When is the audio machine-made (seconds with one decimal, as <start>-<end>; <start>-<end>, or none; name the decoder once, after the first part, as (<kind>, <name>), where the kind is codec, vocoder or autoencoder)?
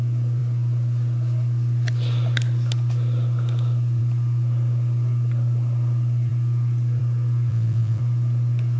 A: 7.5-8.0 (vocoder, Vocos)